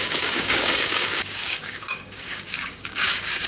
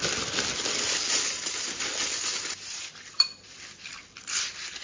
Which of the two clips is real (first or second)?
second